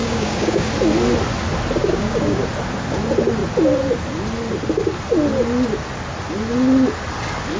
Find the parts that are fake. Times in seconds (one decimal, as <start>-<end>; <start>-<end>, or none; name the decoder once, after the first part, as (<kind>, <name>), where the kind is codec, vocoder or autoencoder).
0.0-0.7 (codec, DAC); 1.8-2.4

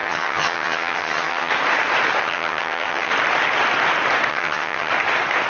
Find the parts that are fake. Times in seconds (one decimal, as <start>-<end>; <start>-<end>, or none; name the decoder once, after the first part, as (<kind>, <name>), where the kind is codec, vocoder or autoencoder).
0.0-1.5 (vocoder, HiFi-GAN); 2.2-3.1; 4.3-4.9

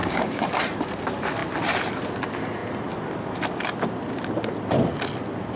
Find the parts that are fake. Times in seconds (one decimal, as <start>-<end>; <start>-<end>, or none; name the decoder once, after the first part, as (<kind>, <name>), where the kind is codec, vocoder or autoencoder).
0.0-0.5 (codec, DAC)

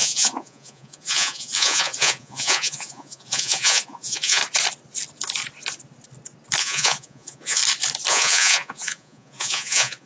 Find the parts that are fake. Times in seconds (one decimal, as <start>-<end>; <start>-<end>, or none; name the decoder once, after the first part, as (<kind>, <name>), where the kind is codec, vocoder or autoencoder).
0.0-4.4 (vocoder, Vocos); 6.6-7.6; 8.1-10.1